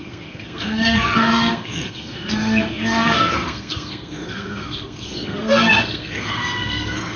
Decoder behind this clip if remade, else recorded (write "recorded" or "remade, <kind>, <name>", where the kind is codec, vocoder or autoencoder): remade, codec, SNAC